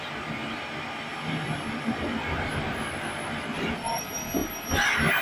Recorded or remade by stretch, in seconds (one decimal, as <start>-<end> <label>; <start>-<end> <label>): 0.0-5.2 recorded